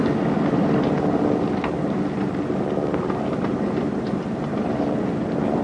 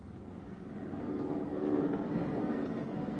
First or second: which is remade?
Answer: second